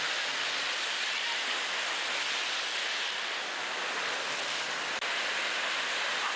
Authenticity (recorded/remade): recorded